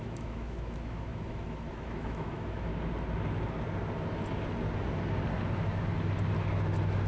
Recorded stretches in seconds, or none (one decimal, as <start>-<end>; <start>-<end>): 2.7-7.1